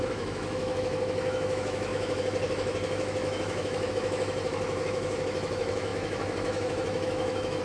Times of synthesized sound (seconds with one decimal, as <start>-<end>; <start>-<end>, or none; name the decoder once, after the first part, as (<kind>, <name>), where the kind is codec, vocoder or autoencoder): 0.0-7.6 (autoencoder, DAC-VAE)